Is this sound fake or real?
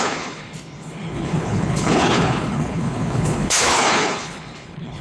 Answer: fake